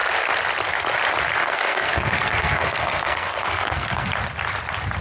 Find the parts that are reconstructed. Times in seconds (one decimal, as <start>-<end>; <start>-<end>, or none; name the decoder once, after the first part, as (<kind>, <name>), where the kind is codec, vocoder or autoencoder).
1.4-4.1 (codec, SNAC)

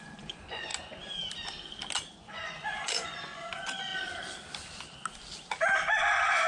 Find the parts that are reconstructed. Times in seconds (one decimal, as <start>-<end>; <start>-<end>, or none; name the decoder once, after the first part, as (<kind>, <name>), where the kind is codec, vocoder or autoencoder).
0.0-0.7 (vocoder, Vocos); 2.2-3.9

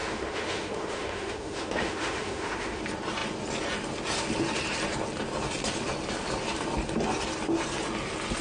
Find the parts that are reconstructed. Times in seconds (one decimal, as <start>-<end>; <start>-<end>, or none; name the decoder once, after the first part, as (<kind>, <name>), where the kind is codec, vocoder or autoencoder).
0.0-2.8 (autoencoder, DAC-VAE)

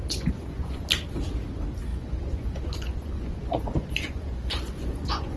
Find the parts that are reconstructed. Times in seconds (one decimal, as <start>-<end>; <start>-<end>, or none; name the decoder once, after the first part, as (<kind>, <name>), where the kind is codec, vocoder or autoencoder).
0.0-0.8 (vocoder, Vocos); 1.9-5.4

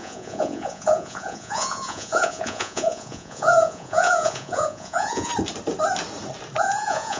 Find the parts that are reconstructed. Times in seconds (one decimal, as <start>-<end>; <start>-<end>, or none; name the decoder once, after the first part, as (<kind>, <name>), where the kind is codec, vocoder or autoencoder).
0.0-5.3 (vocoder, Vocos); 6.6-7.2

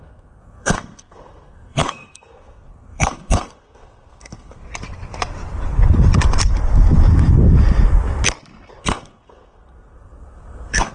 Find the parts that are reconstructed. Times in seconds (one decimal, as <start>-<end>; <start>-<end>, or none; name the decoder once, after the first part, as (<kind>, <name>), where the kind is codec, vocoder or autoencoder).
0.0-4.6 (codec, SNAC); 8.8-10.9

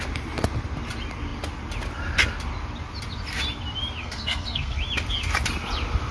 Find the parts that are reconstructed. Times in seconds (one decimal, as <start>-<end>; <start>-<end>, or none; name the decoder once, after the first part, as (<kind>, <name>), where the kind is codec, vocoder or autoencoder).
4.0-4.8 (codec, SNAC)